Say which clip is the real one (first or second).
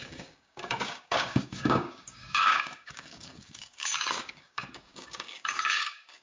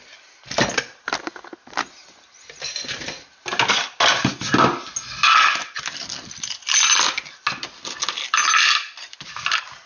second